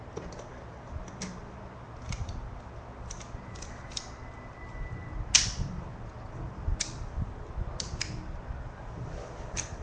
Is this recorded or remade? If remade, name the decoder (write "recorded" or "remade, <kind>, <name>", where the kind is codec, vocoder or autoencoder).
recorded